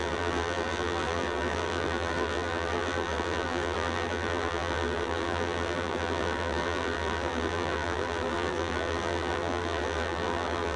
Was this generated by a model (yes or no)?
yes